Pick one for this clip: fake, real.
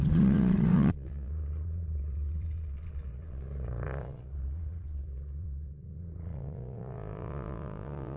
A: fake